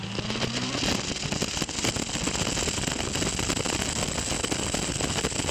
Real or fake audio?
real